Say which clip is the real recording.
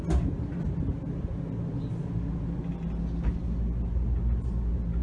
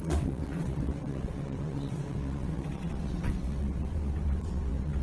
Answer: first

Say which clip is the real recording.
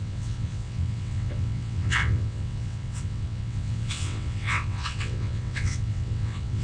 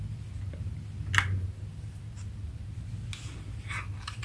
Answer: second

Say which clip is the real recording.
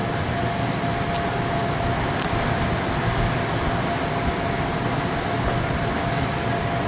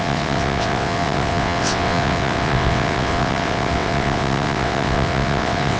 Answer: first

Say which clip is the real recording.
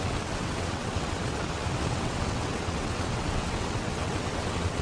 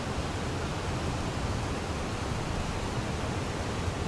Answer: second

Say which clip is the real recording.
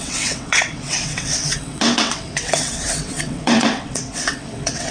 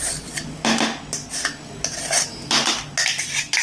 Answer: second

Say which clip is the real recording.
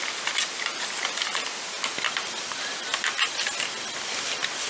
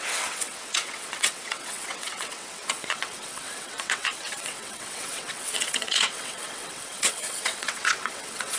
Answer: first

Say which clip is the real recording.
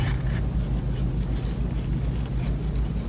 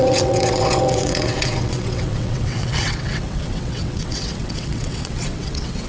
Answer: first